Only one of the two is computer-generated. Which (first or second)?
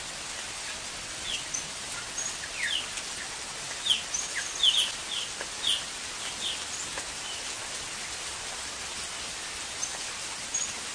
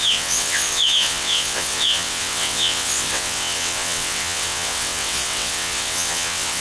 second